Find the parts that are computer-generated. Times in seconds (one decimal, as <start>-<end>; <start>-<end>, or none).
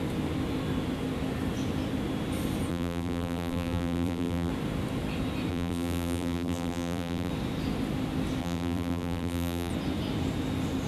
2.7-4.5; 5.5-7.3; 8.4-9.7